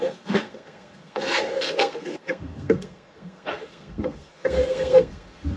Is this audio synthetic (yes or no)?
yes